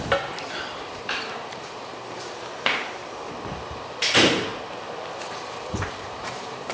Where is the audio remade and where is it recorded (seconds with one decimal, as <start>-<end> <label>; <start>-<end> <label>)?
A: 0.0-3.0 remade; 3.0-4.0 recorded; 4.0-4.5 remade; 4.5-5.2 recorded; 5.2-6.7 remade